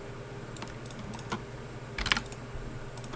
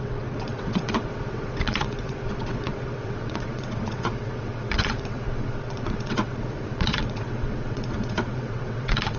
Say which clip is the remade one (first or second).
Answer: second